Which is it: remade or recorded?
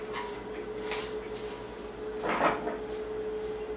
recorded